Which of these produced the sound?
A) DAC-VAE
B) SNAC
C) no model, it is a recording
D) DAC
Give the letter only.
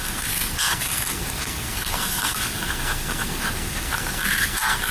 B